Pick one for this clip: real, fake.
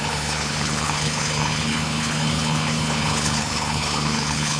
fake